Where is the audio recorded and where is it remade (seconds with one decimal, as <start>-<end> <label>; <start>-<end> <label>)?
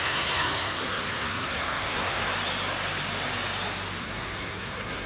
0.0-2.3 remade; 2.3-4.0 recorded; 4.0-5.1 remade